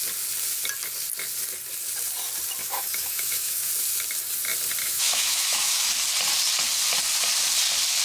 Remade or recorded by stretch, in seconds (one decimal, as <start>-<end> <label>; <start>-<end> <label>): 0.0-2.6 recorded; 2.6-3.7 remade; 3.7-4.8 recorded; 4.8-5.9 remade; 5.9-8.0 recorded